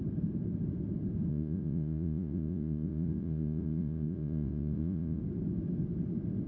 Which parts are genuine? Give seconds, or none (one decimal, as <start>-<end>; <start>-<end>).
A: 0.0-1.3; 5.2-6.5